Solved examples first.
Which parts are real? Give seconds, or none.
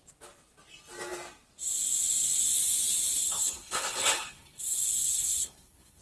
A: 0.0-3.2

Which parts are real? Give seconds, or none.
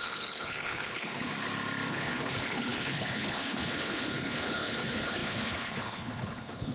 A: 1.3-1.9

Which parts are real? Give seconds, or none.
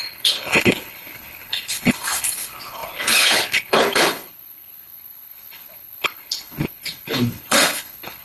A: none